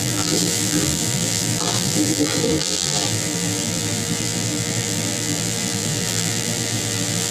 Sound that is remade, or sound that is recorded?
remade